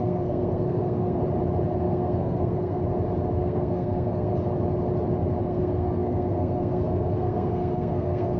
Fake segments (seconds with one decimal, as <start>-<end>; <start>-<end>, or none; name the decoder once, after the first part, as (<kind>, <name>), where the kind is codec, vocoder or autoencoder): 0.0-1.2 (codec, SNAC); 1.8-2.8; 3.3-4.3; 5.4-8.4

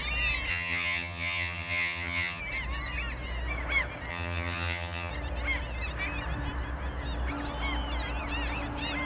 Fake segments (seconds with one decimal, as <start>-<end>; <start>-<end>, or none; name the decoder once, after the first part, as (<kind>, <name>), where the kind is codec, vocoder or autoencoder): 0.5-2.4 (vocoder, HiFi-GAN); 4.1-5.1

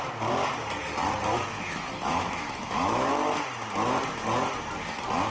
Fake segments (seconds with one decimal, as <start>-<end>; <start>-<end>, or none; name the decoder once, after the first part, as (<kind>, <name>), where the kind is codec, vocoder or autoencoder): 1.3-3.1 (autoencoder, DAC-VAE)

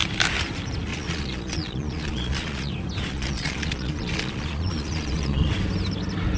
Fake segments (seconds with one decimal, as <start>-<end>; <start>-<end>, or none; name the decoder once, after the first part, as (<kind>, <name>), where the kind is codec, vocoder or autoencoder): 0.9-2.7 (vocoder, Vocos); 3.1-5.5

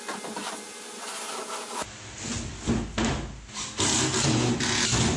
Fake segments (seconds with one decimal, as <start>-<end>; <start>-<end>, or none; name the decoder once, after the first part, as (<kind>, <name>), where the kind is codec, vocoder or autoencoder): none